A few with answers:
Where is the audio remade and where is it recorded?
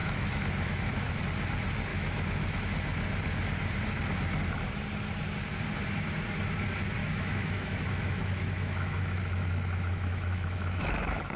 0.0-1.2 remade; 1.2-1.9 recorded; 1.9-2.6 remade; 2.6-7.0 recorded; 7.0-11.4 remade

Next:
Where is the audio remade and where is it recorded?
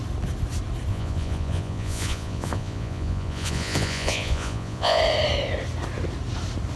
0.0-0.9 recorded; 0.9-5.0 remade; 5.0-6.8 recorded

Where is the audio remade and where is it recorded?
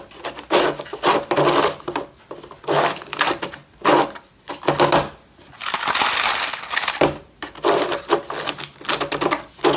0.0-9.8 recorded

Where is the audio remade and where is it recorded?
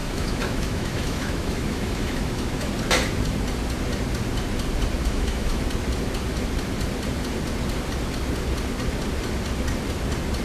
0.0-2.7 remade; 2.7-5.0 recorded; 5.0-5.6 remade; 5.6-10.4 recorded